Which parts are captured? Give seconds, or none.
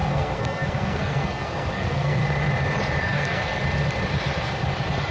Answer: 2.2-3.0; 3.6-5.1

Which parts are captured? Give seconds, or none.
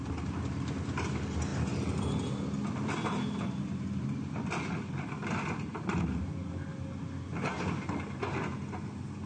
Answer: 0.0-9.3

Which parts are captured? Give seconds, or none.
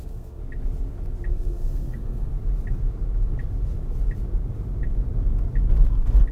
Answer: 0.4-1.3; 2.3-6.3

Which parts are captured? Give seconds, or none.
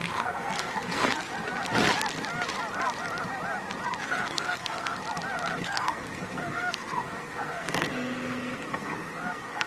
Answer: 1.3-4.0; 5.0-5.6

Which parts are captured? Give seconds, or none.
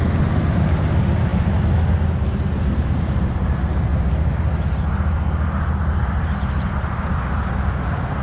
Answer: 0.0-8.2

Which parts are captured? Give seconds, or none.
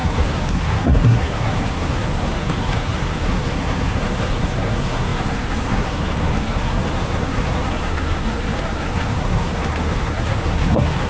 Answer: none